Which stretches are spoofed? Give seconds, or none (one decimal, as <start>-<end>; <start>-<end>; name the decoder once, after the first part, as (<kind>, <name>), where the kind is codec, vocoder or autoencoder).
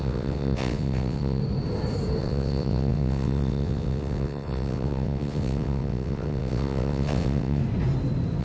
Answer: 0.0-1.4 (vocoder, WaveNeXt); 2.2-7.6